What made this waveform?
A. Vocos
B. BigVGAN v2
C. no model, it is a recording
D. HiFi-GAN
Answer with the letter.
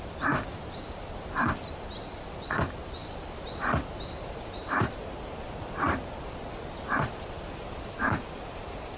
C